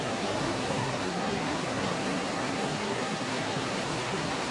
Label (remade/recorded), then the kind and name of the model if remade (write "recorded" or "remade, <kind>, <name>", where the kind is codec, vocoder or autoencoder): remade, codec, SNAC